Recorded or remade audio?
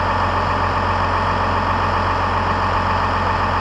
recorded